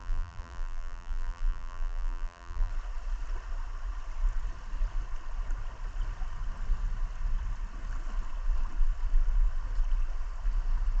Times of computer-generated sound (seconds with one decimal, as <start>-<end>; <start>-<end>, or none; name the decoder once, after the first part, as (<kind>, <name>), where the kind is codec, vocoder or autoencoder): 0.0-2.7 (vocoder, BigVGAN v2)